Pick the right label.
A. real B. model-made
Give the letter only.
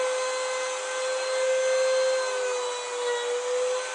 A